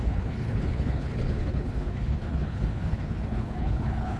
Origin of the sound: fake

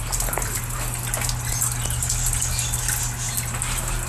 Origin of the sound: real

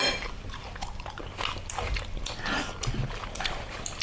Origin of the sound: real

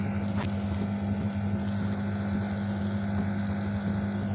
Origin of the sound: real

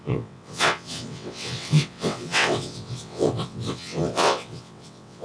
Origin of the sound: fake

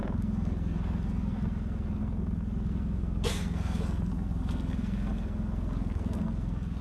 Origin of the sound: fake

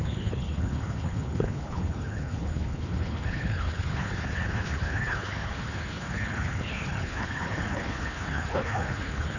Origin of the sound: fake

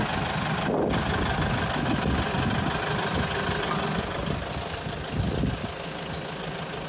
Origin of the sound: real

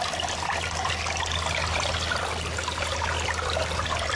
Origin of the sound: real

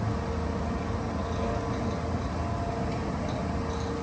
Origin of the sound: real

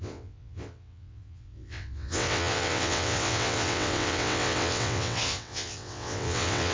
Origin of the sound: fake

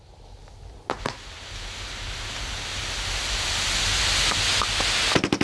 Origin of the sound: real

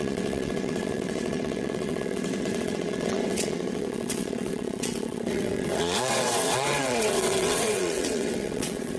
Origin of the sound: fake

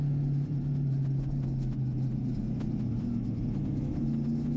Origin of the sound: real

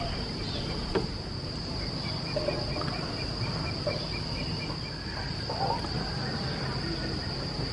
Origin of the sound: real